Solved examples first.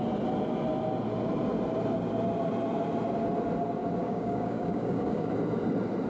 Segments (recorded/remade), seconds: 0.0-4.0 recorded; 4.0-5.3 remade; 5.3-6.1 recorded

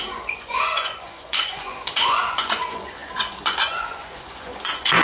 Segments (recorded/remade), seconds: 0.0-5.0 remade

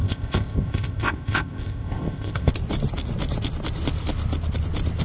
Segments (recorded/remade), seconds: 0.0-2.5 remade; 2.5-5.0 recorded

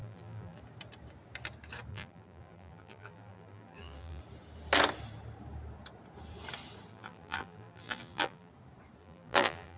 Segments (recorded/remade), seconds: 0.0-0.6 remade; 0.6-1.9 recorded; 1.9-4.2 remade; 4.2-6.9 recorded; 6.9-8.5 remade; 8.5-9.0 recorded; 9.0-9.8 remade

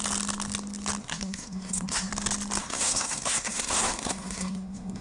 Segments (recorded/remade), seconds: 0.0-1.0 recorded; 1.0-2.1 remade; 2.1-2.6 recorded; 2.6-5.0 remade

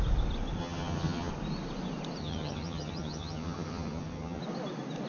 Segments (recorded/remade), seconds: 0.0-0.6 recorded; 0.6-1.3 remade; 1.3-2.2 recorded; 2.2-4.4 remade; 4.4-5.1 recorded

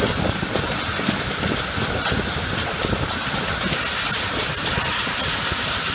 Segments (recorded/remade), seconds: 0.0-5.9 recorded